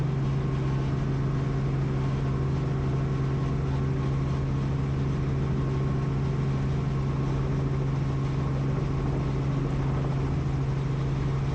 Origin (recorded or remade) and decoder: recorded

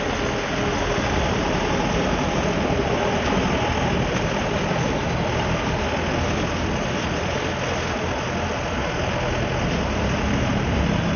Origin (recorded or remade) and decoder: recorded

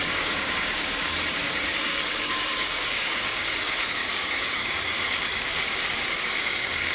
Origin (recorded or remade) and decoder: remade, codec, DAC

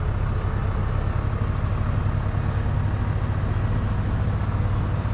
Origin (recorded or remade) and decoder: recorded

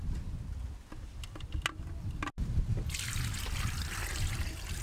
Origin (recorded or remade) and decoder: recorded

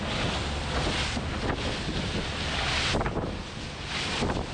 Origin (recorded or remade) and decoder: recorded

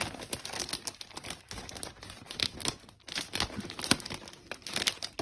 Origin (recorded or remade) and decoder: recorded